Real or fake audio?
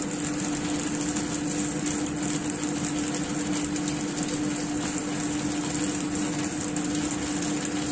real